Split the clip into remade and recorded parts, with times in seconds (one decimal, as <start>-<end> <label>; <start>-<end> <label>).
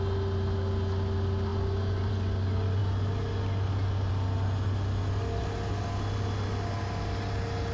0.0-7.7 recorded